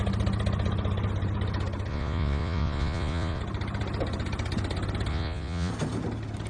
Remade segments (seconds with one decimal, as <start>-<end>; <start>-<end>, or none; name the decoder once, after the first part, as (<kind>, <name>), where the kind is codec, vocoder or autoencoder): 1.9-3.4 (vocoder, Vocos); 5.1-5.7